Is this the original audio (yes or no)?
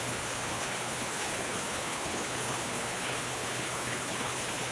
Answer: no